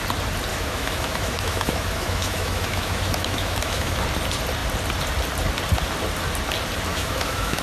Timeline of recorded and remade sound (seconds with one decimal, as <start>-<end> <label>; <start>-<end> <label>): 0.0-0.5 recorded; 0.5-4.0 remade; 4.0-6.9 recorded; 6.9-7.6 remade